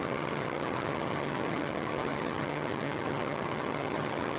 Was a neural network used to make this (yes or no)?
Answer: yes